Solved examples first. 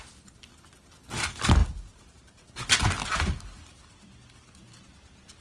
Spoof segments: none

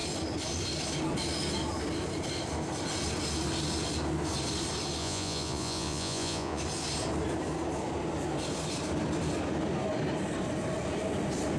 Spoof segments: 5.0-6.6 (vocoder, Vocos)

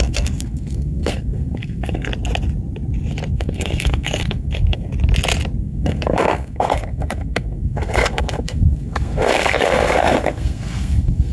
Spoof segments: 0.0-2.1 (codec, SNAC); 3.3-4.9; 5.6-11.3

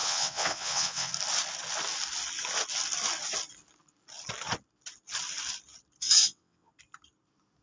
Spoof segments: 0.0-1.1 (vocoder, WaveNeXt); 6.0-6.7

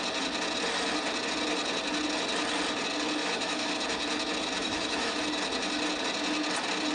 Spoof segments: 3.2-3.7 (autoencoder, DAC-VAE); 4.6-5.2

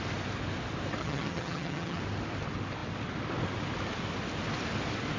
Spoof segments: 1.0-2.0 (vocoder, HiFi-GAN)

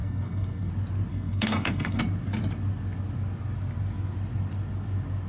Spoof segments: 0.0-0.7 (codec, SNAC); 1.1-2.0

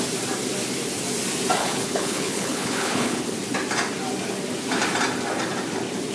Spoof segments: 1.6-3.2 (codec, HILCodec)